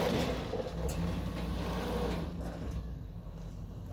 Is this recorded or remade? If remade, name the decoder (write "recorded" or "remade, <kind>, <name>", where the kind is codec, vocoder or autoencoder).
recorded